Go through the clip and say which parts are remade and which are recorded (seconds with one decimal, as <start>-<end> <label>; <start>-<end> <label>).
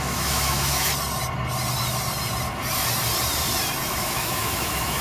0.0-0.9 remade; 0.9-3.9 recorded; 3.9-5.0 remade